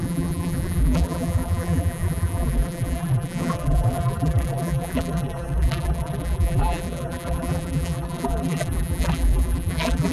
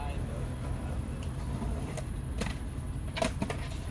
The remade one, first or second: first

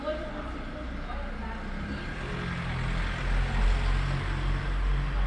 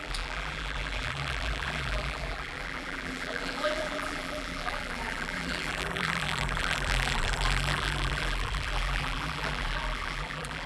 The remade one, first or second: second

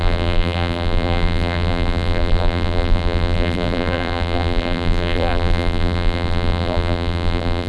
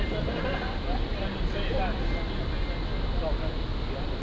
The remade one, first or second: first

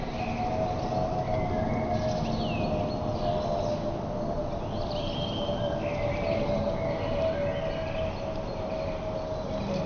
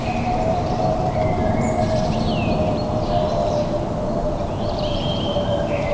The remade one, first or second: second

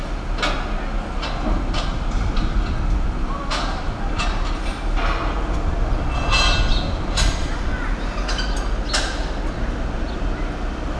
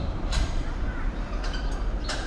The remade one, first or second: second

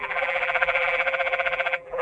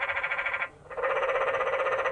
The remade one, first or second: first